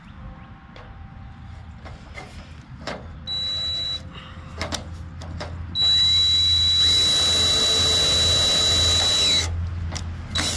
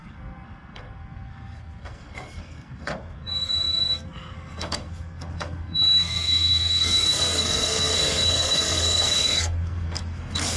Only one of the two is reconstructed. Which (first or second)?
second